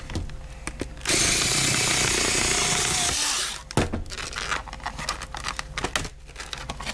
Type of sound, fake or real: real